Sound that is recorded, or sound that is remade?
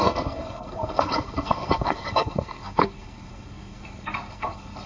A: remade